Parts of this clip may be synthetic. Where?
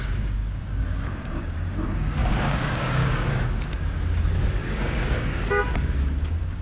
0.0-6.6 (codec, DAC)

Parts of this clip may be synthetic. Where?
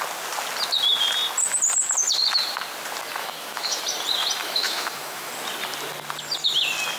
3.2-3.8 (autoencoder, DAC-VAE); 4.4-5.3